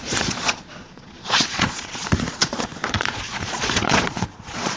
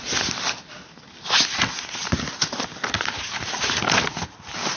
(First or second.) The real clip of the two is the second